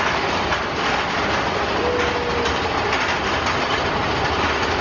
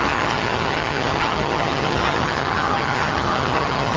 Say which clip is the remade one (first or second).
second